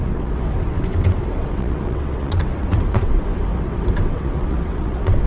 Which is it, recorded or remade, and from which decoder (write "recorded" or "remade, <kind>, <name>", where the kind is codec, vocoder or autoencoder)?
remade, vocoder, WaveNeXt